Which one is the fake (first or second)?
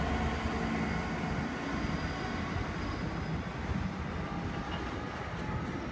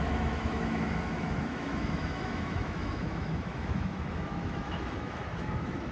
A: second